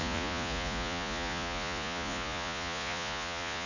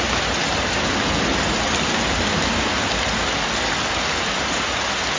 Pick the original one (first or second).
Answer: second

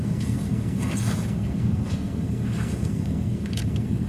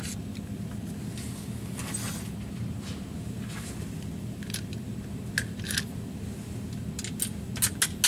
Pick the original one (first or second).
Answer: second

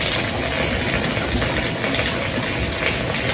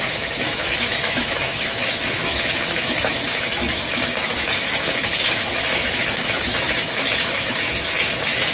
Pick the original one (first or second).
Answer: first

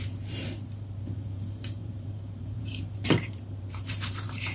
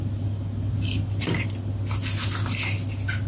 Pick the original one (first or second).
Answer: second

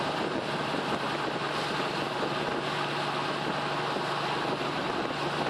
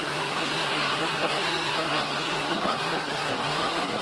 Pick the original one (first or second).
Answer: first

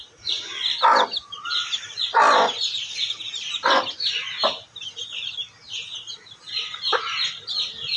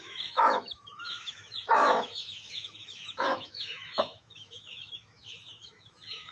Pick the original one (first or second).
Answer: first